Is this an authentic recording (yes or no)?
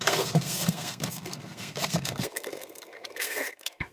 no